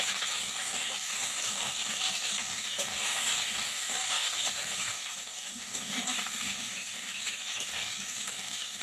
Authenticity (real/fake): fake